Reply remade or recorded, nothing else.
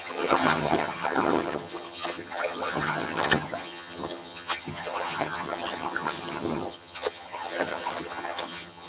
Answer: remade